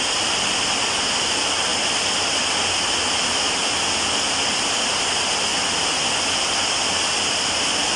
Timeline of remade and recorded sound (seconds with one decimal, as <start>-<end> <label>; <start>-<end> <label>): 0.0-8.0 recorded